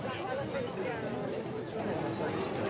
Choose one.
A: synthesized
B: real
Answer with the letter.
B